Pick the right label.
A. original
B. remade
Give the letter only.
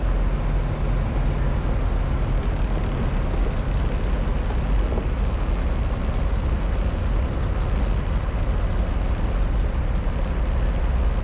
A